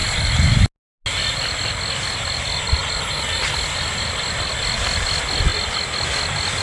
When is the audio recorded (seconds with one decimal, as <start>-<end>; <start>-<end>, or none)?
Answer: 0.0-6.6